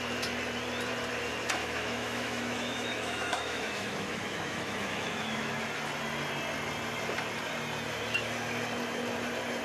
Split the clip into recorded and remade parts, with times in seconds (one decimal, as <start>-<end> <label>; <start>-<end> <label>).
0.0-1.6 recorded; 1.6-5.5 remade; 5.5-9.6 recorded